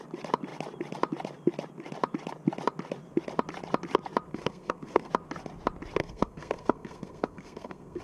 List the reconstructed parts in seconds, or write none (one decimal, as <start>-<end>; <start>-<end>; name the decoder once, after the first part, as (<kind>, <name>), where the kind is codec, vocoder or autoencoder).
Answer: 4.3-5.1 (codec, SNAC); 6.0-8.0